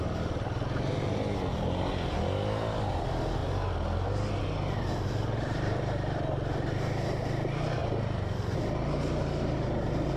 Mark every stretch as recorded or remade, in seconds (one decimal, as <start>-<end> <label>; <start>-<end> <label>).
0.0-10.2 recorded

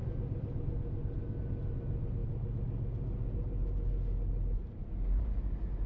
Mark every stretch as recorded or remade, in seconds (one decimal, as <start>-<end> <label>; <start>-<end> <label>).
0.0-5.9 recorded

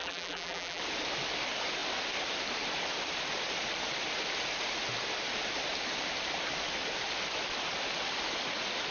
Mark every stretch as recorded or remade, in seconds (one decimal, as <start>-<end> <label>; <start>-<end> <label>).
0.0-0.8 remade; 0.8-8.9 recorded

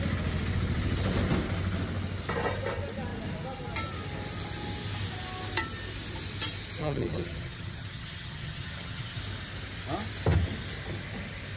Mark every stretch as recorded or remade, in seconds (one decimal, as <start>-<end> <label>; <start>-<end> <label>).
0.0-6.8 recorded; 6.8-9.2 remade; 9.2-11.6 recorded